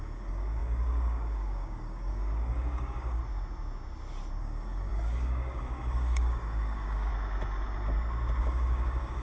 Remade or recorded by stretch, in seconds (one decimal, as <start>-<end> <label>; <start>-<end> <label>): 0.0-3.2 remade; 3.2-4.4 recorded; 4.4-7.1 remade; 7.1-8.4 recorded; 8.4-9.2 remade